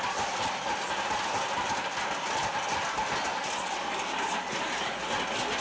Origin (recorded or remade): recorded